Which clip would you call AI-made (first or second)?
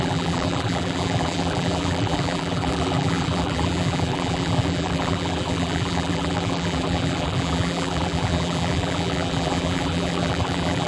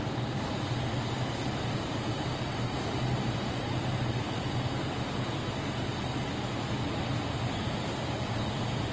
first